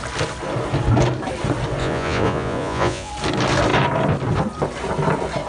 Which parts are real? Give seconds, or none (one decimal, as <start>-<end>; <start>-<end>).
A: 0.0-1.8; 3.1-5.5